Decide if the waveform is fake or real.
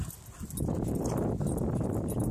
real